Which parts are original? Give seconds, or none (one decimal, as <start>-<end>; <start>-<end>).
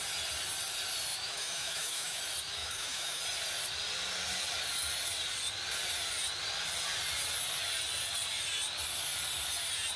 0.0-1.1; 2.2-2.6; 3.2-10.0